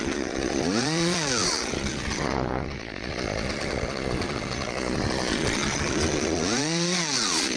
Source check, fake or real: fake